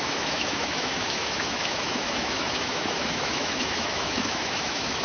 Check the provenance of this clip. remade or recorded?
remade